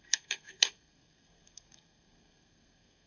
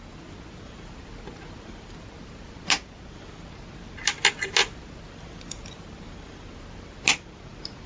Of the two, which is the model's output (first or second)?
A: first